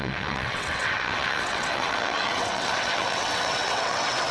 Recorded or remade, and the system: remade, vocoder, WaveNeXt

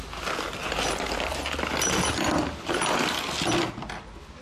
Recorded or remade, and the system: recorded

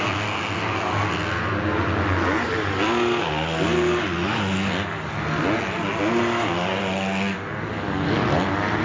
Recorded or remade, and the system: recorded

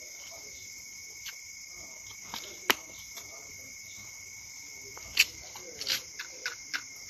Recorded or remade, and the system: remade, vocoder, BigVGAN v2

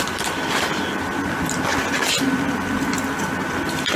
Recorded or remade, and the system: recorded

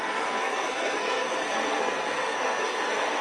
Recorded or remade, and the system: remade, codec, SNAC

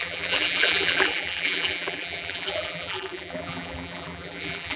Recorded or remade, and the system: remade, vocoder, BigVGAN v2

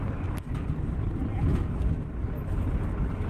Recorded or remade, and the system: recorded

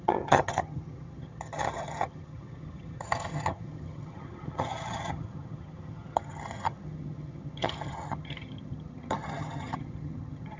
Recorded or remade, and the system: remade, vocoder, HiFi-GAN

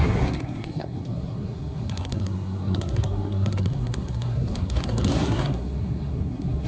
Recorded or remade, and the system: remade, codec, SNAC